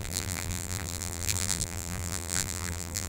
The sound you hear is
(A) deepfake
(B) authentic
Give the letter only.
A